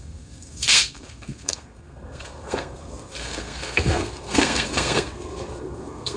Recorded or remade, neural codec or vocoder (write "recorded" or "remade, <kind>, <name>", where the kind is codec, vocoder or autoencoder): remade, codec, SNAC